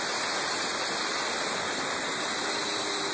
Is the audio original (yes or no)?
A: yes